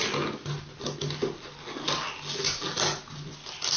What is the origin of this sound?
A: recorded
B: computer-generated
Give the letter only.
A